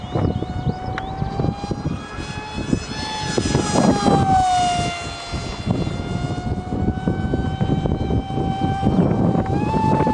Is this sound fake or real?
real